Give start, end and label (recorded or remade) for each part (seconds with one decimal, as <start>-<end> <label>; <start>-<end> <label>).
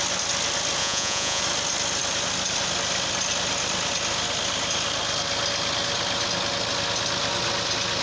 0.0-0.8 recorded; 0.8-1.4 remade; 1.4-8.0 recorded